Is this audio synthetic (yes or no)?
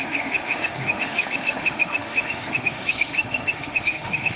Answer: yes